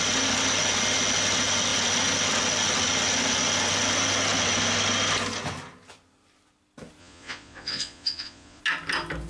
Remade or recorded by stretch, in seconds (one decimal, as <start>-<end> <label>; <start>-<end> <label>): 0.0-7.0 recorded; 7.0-8.6 remade; 8.6-9.3 recorded